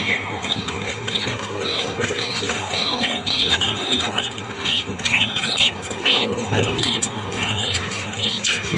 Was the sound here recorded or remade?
remade